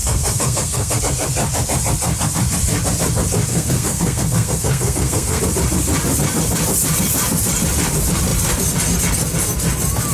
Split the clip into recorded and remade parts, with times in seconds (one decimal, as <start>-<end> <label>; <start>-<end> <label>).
0.0-1.0 remade; 1.0-3.5 recorded; 3.5-5.4 remade; 5.4-10.1 recorded